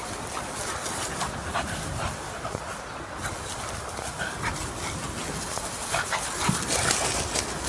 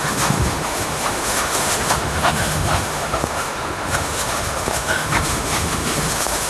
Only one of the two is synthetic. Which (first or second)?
second